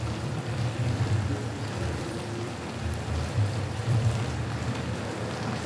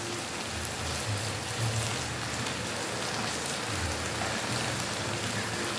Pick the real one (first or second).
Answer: second